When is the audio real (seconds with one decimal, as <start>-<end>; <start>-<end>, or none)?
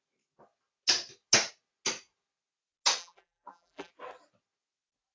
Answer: 0.0-3.0; 3.9-5.1